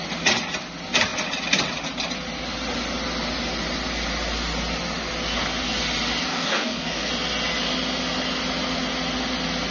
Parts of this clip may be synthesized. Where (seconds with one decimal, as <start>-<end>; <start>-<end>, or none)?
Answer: 6.3-7.1

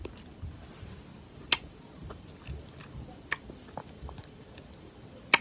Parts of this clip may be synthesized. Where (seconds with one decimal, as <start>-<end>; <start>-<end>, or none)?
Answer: none

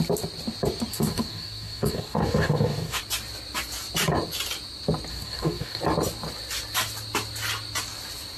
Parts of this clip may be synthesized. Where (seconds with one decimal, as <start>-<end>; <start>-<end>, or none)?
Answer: 0.9-3.0; 5.1-5.8

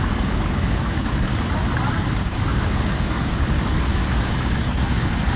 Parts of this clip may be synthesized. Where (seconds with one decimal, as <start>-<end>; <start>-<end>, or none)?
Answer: 0.0-1.3; 2.1-5.4

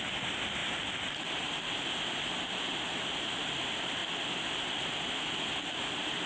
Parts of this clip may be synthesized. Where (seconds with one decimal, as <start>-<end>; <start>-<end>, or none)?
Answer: none

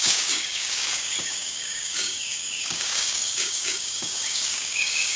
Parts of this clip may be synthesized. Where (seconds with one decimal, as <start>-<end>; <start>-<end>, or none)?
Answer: 0.0-5.2

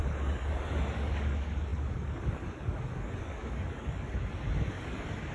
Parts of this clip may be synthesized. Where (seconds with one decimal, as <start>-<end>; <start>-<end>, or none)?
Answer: 0.0-5.3